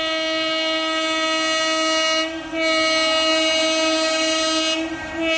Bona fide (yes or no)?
yes